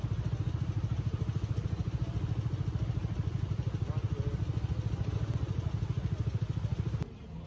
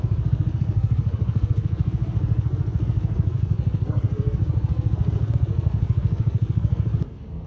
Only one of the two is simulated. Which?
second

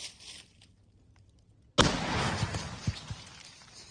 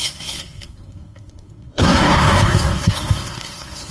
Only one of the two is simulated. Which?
second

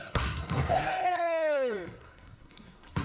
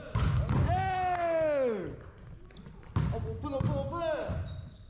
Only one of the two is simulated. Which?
first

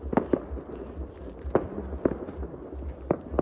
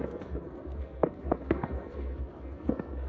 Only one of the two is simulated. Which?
second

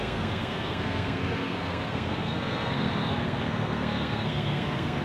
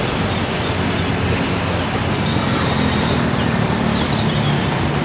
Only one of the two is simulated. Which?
first